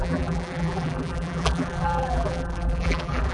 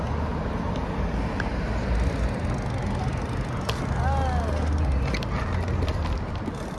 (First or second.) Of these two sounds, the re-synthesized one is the first